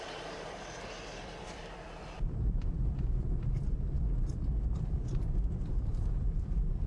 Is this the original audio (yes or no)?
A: no